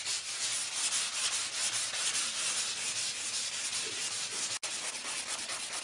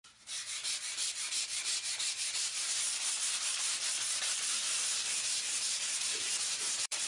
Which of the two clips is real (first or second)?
first